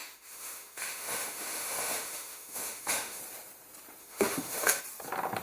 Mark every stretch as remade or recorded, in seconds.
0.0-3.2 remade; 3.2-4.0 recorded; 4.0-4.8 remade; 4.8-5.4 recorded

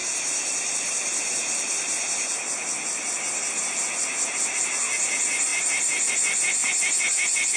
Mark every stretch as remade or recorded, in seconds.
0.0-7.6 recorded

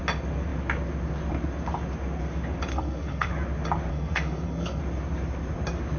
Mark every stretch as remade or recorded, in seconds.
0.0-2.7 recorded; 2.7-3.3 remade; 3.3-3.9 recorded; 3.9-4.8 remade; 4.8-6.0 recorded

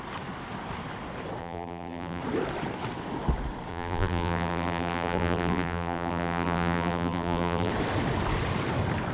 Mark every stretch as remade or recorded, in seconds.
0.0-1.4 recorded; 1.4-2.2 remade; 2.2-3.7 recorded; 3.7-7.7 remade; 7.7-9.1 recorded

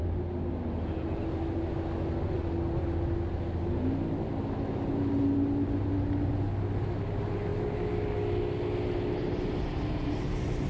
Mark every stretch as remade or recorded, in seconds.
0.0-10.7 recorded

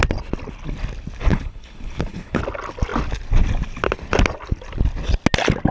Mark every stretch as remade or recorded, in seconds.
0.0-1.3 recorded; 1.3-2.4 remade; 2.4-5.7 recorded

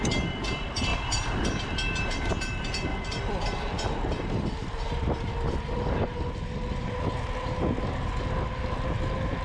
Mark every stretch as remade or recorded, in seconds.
0.0-0.9 recorded; 0.9-2.3 remade; 2.3-2.9 recorded; 2.9-6.3 remade; 6.3-9.4 recorded

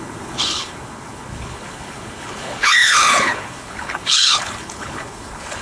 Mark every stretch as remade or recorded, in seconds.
0.0-5.6 remade